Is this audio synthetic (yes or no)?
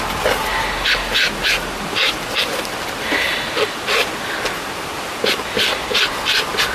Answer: no